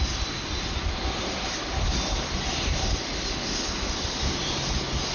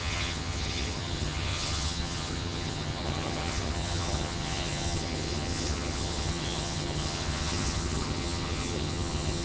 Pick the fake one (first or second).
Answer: second